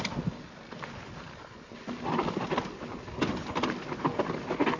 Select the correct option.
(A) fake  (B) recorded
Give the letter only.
B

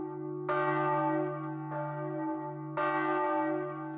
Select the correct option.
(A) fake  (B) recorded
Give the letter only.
B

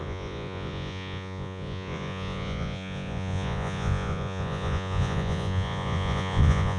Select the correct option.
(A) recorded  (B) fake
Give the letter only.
B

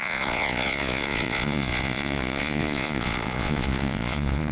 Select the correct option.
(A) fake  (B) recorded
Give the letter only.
A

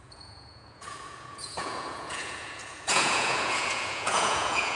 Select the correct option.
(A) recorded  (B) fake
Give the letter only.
B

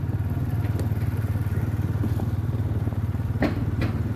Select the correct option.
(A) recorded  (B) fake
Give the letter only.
A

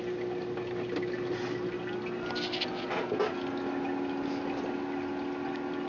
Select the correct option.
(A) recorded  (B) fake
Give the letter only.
A